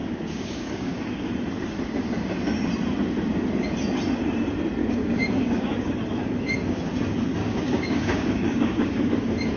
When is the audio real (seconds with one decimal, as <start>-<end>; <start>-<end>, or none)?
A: 1.3-4.8; 5.9-7.4; 9.1-9.6